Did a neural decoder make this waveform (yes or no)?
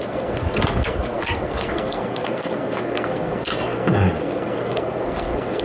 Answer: yes